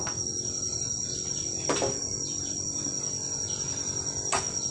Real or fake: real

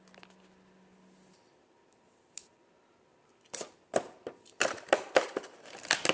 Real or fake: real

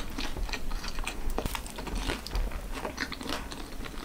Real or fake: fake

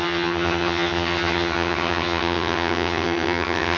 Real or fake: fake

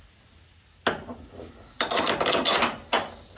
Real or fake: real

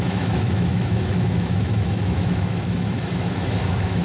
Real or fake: fake